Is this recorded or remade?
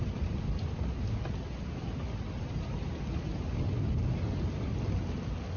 recorded